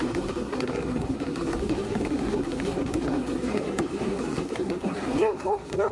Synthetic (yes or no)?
yes